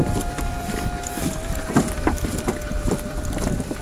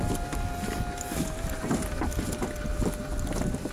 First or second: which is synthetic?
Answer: first